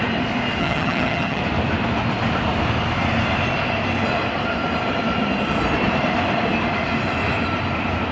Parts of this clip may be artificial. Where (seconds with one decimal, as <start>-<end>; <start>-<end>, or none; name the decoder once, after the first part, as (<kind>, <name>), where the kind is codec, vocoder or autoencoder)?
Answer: 0.6-1.4 (vocoder, HiFi-GAN)